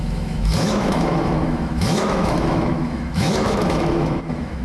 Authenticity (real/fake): fake